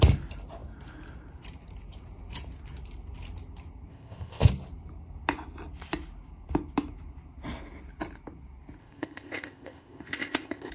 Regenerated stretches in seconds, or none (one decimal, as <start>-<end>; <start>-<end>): 3.9-4.5; 8.8-10.7